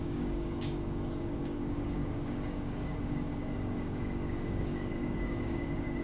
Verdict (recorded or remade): remade